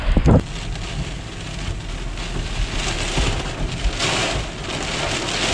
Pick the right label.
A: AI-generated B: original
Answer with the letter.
B